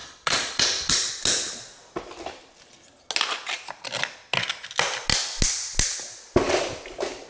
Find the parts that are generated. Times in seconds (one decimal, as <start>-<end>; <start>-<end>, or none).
0.0-1.1